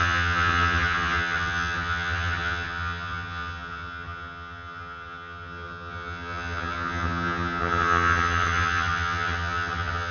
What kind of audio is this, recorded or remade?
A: remade